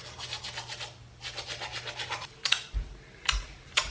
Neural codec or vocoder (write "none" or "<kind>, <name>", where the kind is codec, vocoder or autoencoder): vocoder, BigVGAN v2